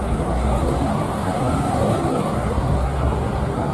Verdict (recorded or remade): remade